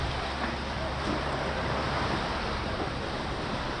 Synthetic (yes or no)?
no